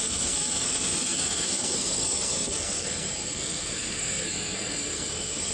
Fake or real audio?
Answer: fake